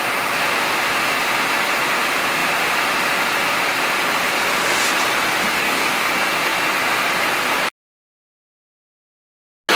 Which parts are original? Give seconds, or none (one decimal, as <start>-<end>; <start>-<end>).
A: 0.0-5.6; 6.1-9.8